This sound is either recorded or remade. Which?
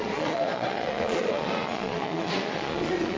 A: remade